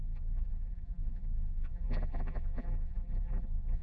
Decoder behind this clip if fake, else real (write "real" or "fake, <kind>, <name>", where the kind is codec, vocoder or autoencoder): fake, vocoder, BigVGAN v2